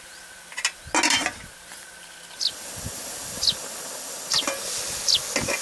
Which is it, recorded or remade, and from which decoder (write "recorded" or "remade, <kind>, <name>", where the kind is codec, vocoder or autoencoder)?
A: recorded